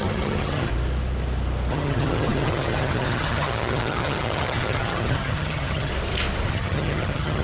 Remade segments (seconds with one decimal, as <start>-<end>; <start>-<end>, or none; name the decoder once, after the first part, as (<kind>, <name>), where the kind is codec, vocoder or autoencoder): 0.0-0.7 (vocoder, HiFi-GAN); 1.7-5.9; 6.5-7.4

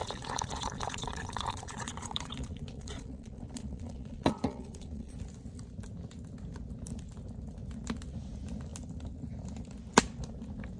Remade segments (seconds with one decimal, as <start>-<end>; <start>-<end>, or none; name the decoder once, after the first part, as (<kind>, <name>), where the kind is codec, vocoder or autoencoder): 0.0-5.1 (vocoder, Vocos)

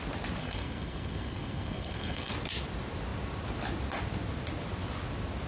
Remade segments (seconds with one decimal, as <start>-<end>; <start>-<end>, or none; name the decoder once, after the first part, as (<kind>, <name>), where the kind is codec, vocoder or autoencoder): 0.4-2.3 (codec, SNAC)

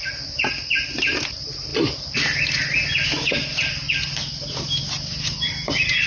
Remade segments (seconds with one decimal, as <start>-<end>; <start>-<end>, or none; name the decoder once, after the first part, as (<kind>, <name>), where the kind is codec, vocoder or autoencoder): none

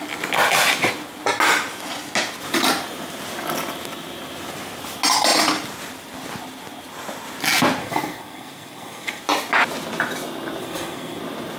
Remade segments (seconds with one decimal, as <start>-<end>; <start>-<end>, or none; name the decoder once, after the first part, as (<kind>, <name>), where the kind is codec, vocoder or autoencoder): 7.8-9.2 (codec, SNAC); 10.6-11.2

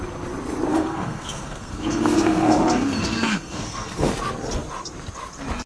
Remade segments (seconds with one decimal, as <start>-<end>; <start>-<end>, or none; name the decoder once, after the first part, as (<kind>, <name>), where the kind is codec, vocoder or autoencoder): 0.7-4.1 (codec, SNAC)